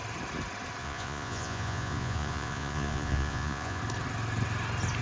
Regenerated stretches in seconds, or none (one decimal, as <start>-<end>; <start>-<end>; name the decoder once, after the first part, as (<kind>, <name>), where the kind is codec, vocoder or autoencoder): 0.8-3.8 (vocoder, Vocos)